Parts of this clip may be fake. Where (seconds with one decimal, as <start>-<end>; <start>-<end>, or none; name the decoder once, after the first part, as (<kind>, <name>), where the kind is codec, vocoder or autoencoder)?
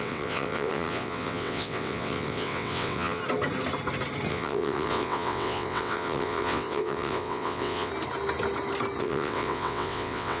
0.0-3.2 (vocoder, WaveNeXt); 4.3-7.9; 9.0-10.4